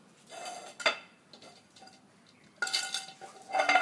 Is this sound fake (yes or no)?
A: no